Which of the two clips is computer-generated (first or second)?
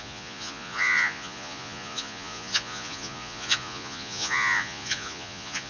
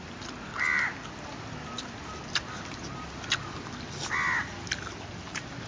first